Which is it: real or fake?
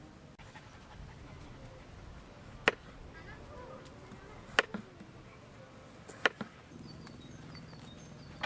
real